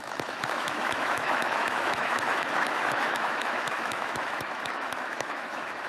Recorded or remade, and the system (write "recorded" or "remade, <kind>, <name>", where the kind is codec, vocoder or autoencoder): remade, autoencoder, DAC-VAE